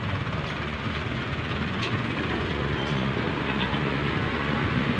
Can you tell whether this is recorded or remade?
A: remade